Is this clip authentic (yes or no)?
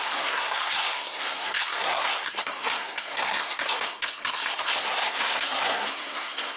no